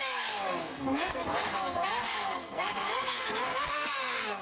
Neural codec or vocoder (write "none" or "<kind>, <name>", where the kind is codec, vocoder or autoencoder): codec, SNAC